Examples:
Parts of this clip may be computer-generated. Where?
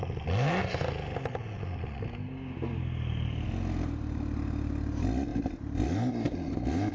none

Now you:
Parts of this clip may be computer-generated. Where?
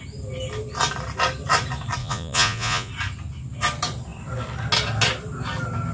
2.0-2.9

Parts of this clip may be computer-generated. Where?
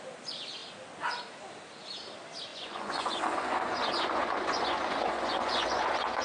2.5-6.2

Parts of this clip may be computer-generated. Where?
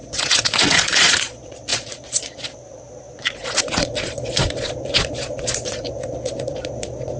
0.0-7.2